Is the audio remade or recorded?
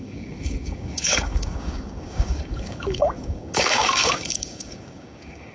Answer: remade